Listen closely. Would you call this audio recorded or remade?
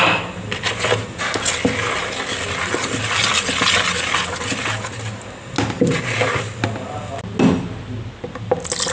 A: recorded